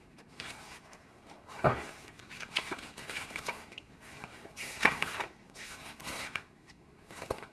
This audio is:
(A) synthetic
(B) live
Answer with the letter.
A